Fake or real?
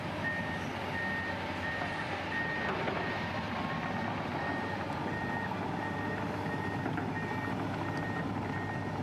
real